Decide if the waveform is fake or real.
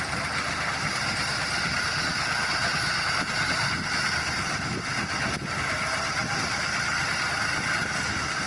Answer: real